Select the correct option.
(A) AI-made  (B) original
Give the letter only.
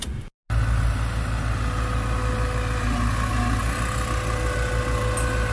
B